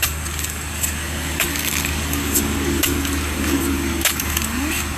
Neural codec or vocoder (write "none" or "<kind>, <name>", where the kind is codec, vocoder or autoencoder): codec, DAC